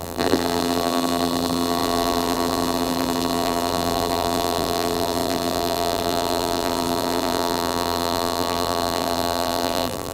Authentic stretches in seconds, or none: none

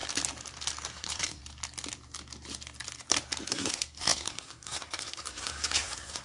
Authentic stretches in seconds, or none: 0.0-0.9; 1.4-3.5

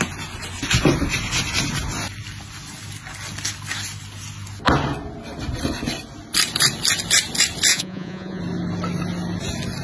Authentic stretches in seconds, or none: 0.0-7.7; 8.4-9.8